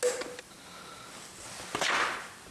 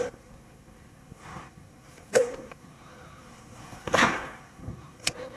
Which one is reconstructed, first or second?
second